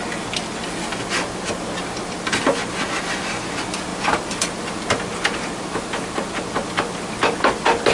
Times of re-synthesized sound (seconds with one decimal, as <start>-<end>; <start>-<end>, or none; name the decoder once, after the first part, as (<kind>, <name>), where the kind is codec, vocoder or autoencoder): none